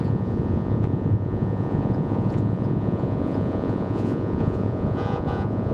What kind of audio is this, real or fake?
fake